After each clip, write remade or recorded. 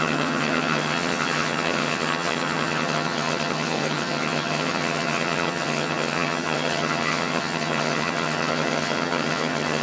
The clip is remade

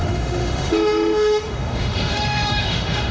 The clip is remade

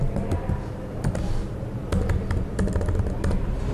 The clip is recorded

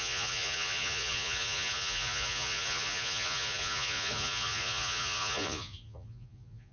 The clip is remade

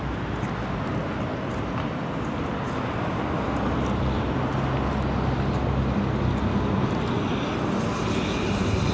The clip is recorded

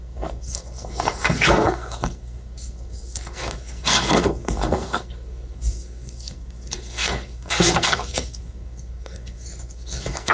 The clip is remade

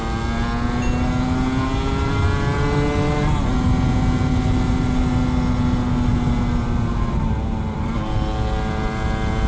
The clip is recorded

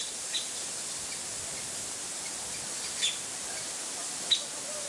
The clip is recorded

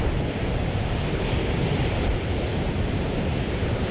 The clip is remade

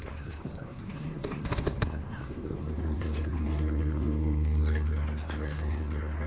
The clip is remade